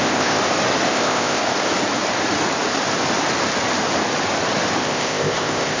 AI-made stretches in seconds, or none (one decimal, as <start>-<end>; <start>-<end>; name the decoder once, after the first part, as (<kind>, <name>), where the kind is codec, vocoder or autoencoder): 0.0-0.4 (codec, ZipCodec); 0.9-1.4; 4.8-5.8

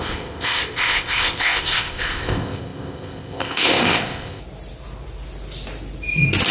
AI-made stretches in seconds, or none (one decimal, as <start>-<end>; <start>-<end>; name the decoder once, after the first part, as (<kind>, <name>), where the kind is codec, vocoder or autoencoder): 0.0-4.4 (codec, ZipCodec)

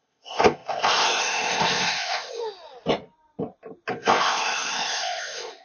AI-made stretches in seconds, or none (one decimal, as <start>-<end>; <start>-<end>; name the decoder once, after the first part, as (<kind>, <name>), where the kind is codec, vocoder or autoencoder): 0.0-2.4 (codec, ZipCodec); 3.9-5.6

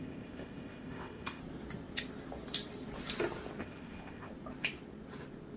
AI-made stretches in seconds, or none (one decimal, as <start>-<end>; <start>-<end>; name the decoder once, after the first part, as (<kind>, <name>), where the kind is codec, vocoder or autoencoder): 0.0-1.4 (codec, ZipCodec); 3.6-4.3

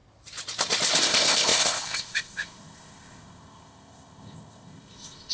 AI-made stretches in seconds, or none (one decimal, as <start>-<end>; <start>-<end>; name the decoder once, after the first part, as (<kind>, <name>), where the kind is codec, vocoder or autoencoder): 1.0-5.3 (codec, ZipCodec)